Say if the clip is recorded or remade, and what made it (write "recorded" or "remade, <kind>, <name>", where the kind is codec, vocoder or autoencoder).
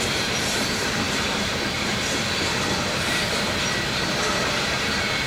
remade, vocoder, BigVGAN v2